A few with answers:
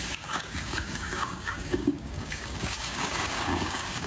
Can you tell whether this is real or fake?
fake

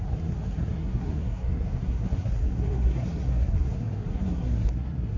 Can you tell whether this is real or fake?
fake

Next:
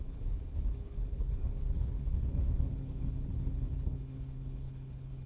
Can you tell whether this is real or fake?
fake